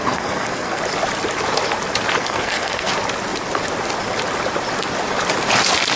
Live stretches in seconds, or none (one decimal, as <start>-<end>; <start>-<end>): 0.8-2.2; 2.9-6.0